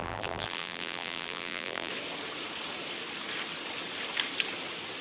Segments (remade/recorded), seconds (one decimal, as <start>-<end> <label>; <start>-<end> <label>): 0.0-1.9 remade; 1.9-5.0 recorded